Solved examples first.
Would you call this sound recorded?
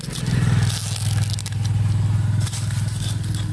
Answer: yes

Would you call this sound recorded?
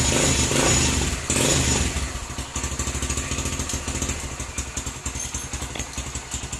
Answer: yes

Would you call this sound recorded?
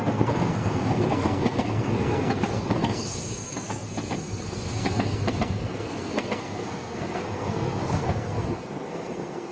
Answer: no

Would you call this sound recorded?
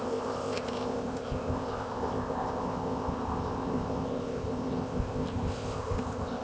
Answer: no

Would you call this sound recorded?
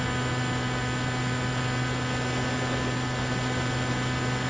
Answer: yes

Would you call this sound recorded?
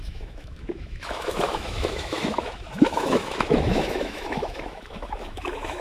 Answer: no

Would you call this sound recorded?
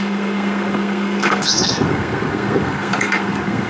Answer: no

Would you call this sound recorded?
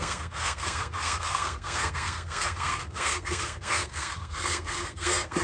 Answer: no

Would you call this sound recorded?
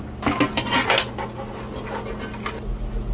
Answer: yes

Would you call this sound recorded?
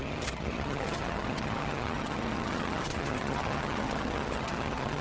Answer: no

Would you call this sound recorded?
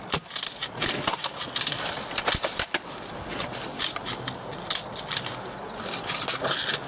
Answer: yes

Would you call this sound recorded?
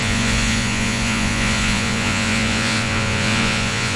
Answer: no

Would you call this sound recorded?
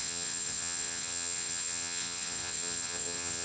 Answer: no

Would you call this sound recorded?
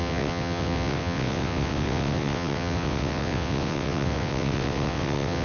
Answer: no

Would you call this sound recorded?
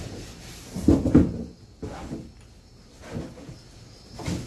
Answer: yes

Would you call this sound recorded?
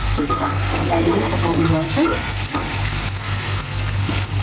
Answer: no